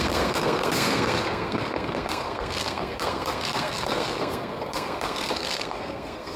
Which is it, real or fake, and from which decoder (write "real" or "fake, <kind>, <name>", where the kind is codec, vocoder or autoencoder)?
fake, codec, SNAC